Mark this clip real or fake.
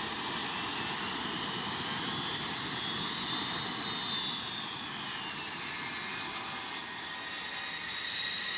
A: real